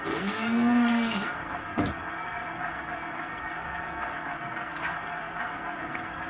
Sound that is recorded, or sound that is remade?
remade